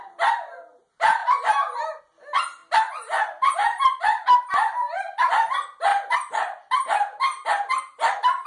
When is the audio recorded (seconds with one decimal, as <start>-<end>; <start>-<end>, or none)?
0.0-1.2; 2.0-2.6; 4.0-5.9; 7.7-8.5